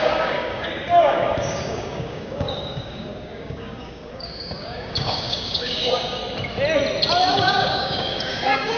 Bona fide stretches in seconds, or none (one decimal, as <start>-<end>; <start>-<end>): 6.2-7.3